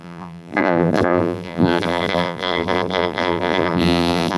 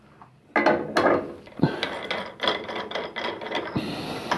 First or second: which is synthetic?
first